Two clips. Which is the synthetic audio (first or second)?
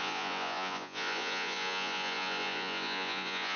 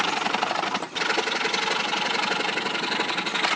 first